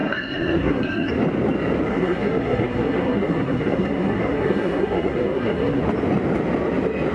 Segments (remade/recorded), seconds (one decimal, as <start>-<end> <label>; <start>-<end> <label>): 0.0-1.1 remade; 1.1-1.9 recorded; 1.9-5.8 remade; 5.8-7.1 recorded

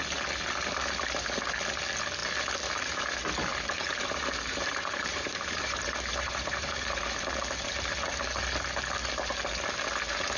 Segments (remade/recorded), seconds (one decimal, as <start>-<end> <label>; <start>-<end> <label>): 0.0-3.5 recorded; 3.5-7.0 remade; 7.0-10.4 recorded

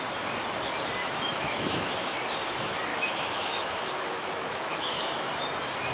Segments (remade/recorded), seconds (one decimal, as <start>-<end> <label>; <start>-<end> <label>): 0.0-1.0 recorded; 1.0-1.9 remade; 1.9-2.9 recorded; 2.9-5.3 remade; 5.3-5.9 recorded

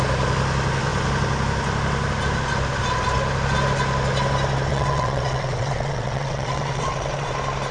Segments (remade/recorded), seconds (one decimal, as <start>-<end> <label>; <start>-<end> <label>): 0.0-4.7 recorded; 4.7-7.3 remade; 7.3-7.7 recorded

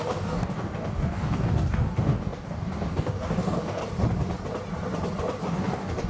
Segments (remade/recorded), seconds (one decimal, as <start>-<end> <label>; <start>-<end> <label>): 0.0-3.8 remade; 3.8-5.4 recorded; 5.4-6.1 remade

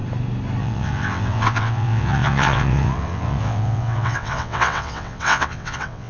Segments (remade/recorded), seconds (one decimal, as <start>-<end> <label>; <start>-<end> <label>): 0.0-0.6 recorded; 0.6-6.1 remade

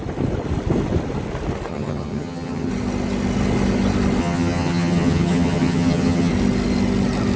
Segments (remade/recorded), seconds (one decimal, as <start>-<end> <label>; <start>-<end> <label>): 0.0-1.7 recorded; 1.7-2.7 remade; 2.7-4.2 recorded; 4.2-6.3 remade; 6.3-7.4 recorded